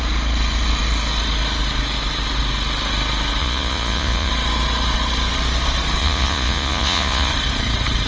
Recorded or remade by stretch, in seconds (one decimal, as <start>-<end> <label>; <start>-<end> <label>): 0.0-3.4 recorded; 3.4-4.3 remade; 4.3-6.0 recorded; 6.0-7.3 remade; 7.3-8.1 recorded